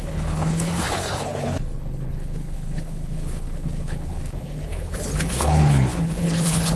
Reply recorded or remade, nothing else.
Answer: remade